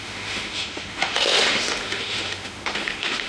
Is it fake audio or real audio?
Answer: fake